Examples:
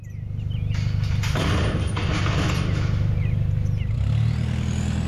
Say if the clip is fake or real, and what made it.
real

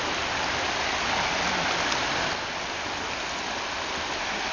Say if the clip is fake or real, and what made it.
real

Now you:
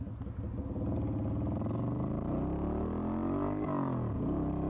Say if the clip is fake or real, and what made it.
real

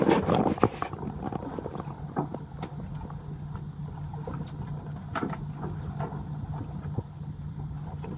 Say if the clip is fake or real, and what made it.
real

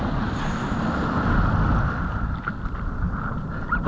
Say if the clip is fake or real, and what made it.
real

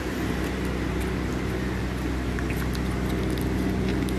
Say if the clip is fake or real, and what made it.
real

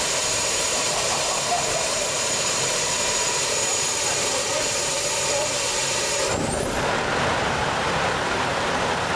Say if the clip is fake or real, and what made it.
fake, vocoder, BigVGAN v2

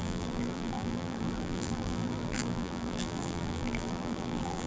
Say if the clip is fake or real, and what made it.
fake, vocoder, BigVGAN v2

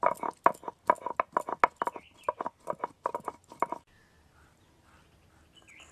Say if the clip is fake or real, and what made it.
real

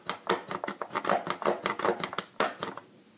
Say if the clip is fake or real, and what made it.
real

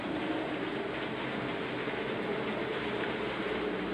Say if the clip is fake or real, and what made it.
real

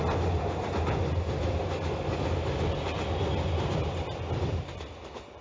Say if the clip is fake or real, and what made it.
real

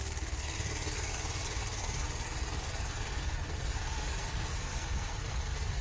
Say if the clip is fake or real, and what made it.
fake, codec, SNAC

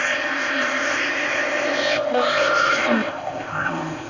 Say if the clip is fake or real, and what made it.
fake, codec, ZipCodec